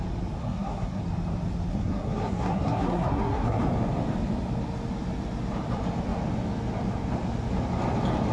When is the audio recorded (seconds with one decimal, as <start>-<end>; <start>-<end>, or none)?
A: 0.0-0.4; 1.0-1.7; 3.6-8.3